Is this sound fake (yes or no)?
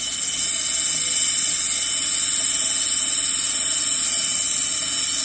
no